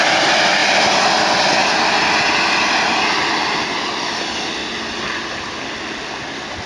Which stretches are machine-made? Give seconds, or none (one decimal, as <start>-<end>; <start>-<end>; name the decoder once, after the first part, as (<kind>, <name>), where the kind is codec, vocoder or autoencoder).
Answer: none